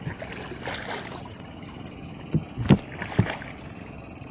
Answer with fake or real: real